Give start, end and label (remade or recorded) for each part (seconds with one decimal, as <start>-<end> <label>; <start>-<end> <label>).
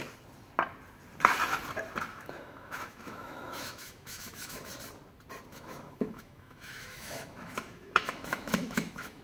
0.0-2.1 recorded; 2.1-4.7 remade; 4.7-5.5 recorded; 5.5-9.2 remade